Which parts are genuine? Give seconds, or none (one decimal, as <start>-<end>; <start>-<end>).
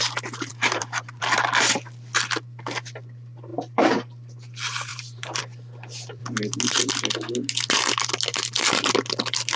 0.0-0.5; 1.2-3.5; 4.0-4.9; 5.4-9.6